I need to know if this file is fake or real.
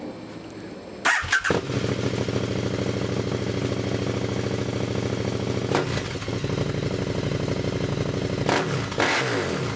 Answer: real